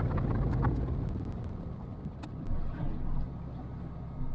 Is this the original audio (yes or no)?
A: yes